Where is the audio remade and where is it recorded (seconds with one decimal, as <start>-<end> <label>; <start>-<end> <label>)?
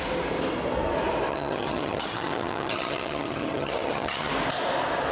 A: 0.0-1.3 recorded; 1.3-4.3 remade; 4.3-5.1 recorded